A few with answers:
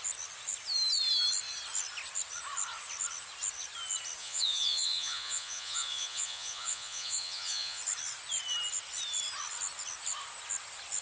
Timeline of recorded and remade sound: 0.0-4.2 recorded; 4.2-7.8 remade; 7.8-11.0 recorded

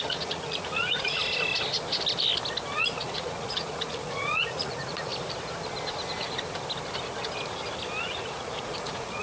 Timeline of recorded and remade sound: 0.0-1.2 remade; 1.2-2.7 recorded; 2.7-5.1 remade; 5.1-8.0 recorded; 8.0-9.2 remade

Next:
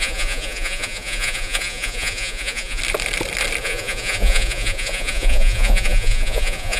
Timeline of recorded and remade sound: 0.0-2.8 remade; 2.8-3.6 recorded; 3.6-6.8 remade

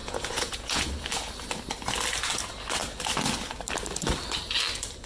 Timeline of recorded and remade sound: 0.0-0.9 remade; 0.9-5.1 recorded

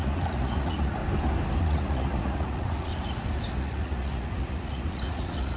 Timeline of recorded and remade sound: 0.0-1.0 remade; 1.0-1.6 recorded; 1.6-2.9 remade; 2.9-3.5 recorded; 3.5-5.6 remade